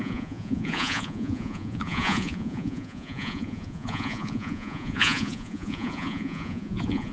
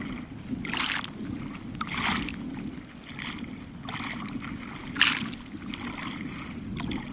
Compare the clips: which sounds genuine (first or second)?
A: second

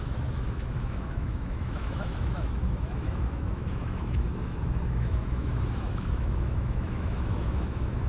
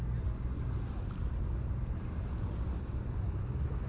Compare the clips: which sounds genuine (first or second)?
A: second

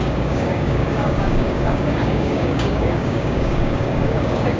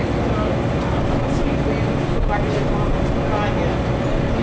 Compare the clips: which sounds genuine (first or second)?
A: second